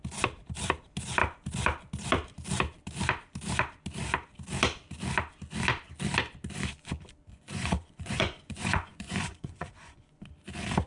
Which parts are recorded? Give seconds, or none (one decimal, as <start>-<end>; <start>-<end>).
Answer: 0.0-7.3; 10.2-10.9